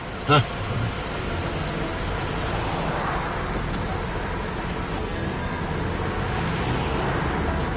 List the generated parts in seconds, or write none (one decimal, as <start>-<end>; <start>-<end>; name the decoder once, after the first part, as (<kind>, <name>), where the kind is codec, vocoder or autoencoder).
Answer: 5.0-5.6 (codec, SNAC)